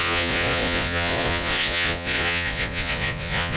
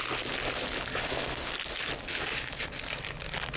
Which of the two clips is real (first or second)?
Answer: second